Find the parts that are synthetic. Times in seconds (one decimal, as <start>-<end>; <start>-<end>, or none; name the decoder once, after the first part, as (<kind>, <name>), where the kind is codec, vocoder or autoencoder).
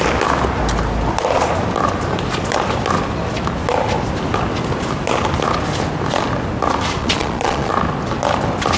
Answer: 7.0-7.7 (vocoder, Vocos)